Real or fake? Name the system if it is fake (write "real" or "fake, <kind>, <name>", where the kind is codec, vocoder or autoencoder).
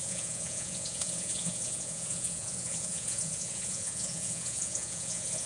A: fake, vocoder, Vocos